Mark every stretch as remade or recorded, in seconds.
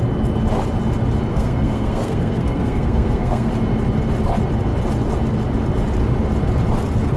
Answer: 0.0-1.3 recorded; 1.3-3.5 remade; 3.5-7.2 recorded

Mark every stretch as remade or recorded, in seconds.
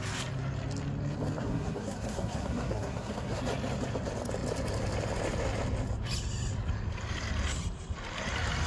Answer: 0.0-1.4 recorded; 1.4-3.4 remade; 3.4-8.7 recorded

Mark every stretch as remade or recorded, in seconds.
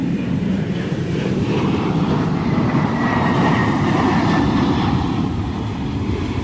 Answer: 0.0-3.6 remade; 3.6-4.5 recorded; 4.5-6.4 remade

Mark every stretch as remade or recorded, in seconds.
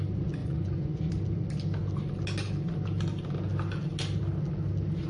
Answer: 0.0-0.4 recorded; 0.4-1.1 remade; 1.1-5.1 recorded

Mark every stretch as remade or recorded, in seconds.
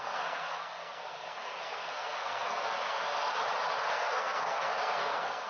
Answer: 0.0-3.4 remade; 3.4-3.9 recorded; 3.9-5.5 remade